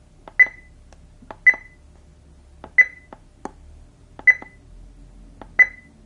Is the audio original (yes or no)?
yes